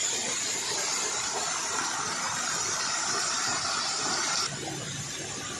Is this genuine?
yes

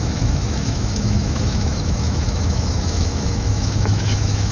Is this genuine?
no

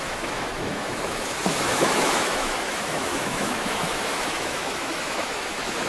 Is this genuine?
no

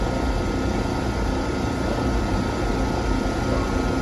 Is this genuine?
yes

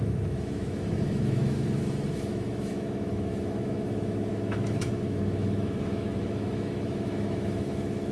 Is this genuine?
no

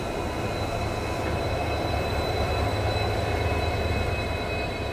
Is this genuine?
yes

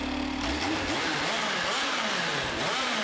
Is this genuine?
yes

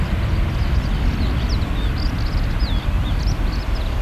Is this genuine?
yes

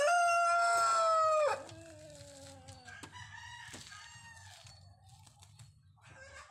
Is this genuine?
yes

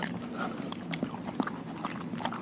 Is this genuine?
yes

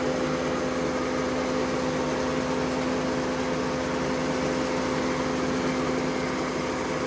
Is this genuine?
yes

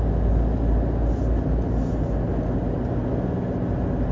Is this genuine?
yes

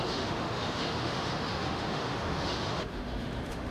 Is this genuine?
no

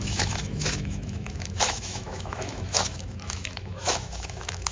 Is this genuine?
no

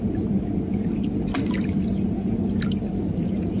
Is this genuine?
yes